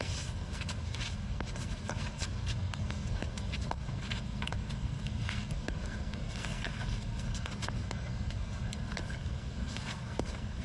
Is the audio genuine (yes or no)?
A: no